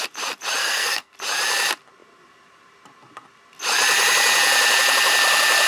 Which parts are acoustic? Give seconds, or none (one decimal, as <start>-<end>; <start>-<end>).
0.0-0.6; 1.1-5.7